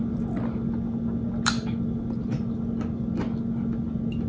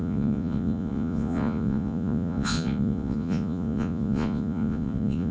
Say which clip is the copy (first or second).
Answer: second